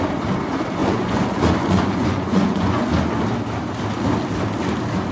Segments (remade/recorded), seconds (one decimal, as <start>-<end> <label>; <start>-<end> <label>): 0.0-0.8 recorded; 0.8-2.9 remade; 2.9-5.1 recorded